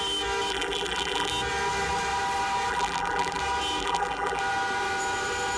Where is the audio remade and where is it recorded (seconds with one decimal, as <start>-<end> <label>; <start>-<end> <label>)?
0.0-0.5 recorded; 0.5-1.3 remade; 1.3-2.7 recorded; 2.7-3.4 remade; 3.4-3.8 recorded; 3.8-4.4 remade; 4.4-5.6 recorded